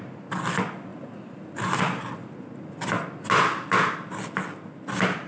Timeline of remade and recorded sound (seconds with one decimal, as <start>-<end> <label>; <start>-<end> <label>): 0.0-5.3 recorded